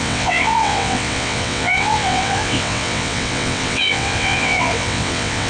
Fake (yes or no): yes